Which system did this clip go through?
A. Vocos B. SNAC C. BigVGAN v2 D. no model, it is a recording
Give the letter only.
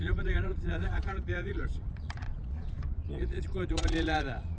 A